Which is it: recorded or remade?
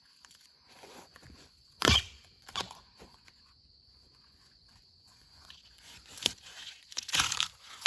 remade